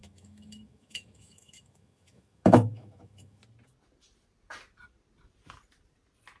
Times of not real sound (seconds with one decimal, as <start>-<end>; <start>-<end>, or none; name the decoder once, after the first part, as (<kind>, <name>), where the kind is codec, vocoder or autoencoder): 0.0-3.4 (autoencoder, DAC-VAE)